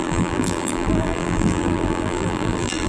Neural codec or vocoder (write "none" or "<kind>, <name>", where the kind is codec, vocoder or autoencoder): vocoder, BigVGAN v2